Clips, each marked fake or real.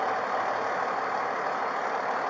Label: real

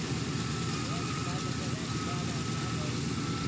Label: real